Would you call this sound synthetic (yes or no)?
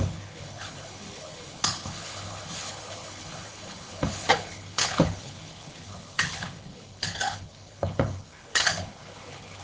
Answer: yes